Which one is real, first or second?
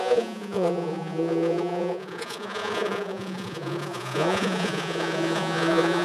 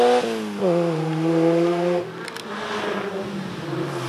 second